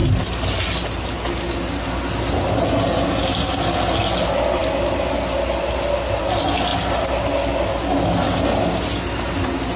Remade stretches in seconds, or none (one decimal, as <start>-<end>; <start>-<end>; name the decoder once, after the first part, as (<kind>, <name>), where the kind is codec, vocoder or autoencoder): none